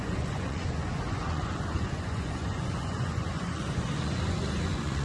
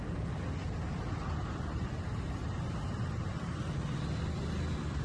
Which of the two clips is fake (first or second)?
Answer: first